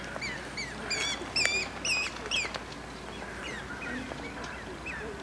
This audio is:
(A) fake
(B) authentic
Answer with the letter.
B